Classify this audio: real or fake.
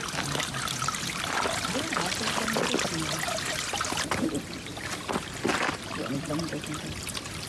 real